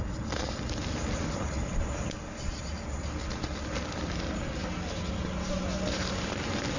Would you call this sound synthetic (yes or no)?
no